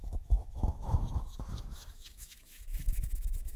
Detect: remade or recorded remade